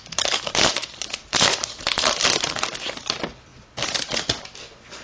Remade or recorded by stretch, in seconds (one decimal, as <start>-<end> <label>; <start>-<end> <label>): 0.0-5.0 recorded